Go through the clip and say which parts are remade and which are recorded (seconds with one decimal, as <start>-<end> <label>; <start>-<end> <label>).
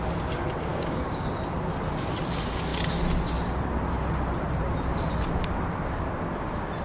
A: 0.0-0.7 recorded; 0.7-1.3 remade; 1.3-6.8 recorded